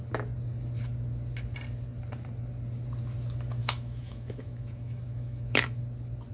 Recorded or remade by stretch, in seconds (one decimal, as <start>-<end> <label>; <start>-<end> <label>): 0.0-3.6 recorded; 3.6-5.8 remade; 5.8-6.3 recorded